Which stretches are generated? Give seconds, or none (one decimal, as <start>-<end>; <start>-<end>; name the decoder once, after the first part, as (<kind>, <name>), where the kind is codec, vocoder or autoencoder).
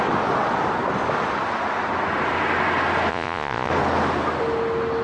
3.1-3.7 (vocoder, Vocos)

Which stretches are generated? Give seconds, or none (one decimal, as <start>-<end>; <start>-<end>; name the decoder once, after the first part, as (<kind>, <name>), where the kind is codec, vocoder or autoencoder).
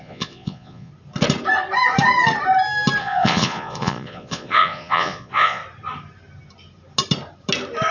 0.0-0.9 (vocoder, Vocos); 3.0-5.6